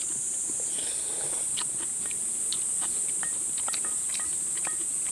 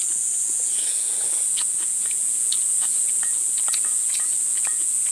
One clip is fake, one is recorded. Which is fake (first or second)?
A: second